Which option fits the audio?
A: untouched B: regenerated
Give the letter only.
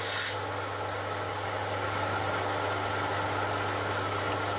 A